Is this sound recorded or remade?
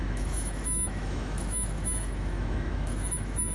remade